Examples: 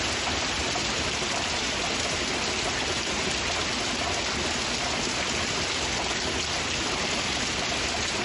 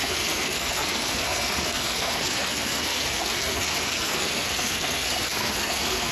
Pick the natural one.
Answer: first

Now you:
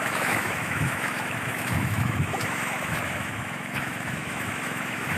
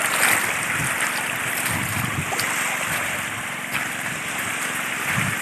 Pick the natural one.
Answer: second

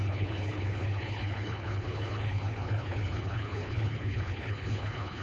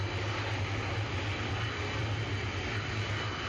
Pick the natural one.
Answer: second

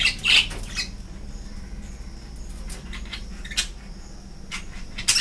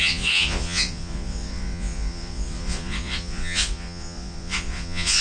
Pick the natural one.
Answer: first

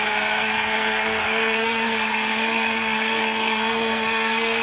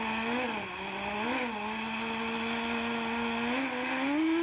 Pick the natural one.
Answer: second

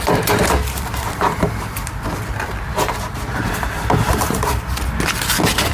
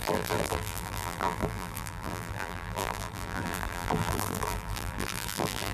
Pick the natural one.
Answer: first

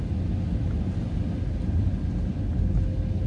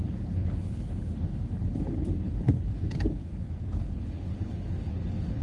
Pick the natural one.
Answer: first